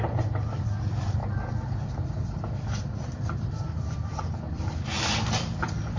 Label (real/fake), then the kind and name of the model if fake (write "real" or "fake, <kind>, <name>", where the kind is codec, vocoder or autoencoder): fake, vocoder, BigVGAN v2